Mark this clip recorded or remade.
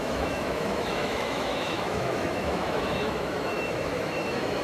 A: remade